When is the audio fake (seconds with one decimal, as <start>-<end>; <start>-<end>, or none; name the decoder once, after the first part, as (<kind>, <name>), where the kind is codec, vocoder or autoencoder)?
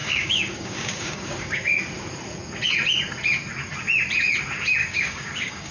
0.0-1.8 (codec, DAC); 4.8-5.7